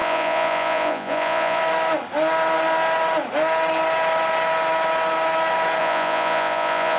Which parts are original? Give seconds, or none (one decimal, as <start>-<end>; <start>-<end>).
1.6-5.8